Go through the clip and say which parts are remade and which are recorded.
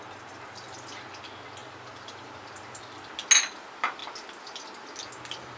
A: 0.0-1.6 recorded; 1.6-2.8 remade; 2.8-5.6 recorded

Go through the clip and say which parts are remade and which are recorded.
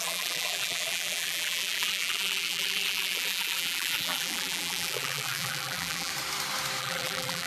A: 0.0-6.1 remade; 6.1-6.8 recorded; 6.8-7.5 remade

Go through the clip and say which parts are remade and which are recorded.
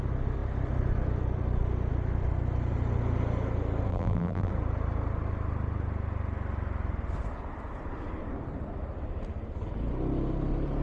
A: 0.0-3.9 recorded; 3.9-4.5 remade; 4.5-10.8 recorded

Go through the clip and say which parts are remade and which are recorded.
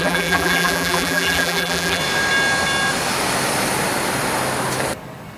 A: 0.0-2.0 remade; 2.0-5.4 recorded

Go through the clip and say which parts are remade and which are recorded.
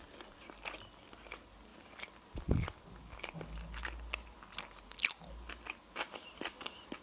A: 0.0-7.0 recorded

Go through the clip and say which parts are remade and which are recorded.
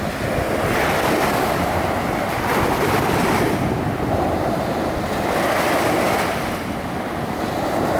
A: 0.0-8.0 recorded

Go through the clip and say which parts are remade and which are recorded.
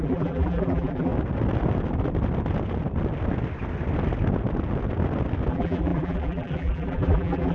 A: 0.0-1.1 remade; 1.1-5.5 recorded; 5.5-7.5 remade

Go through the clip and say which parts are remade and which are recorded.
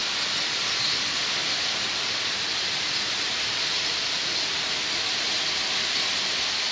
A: 0.0-4.0 recorded; 4.0-6.7 remade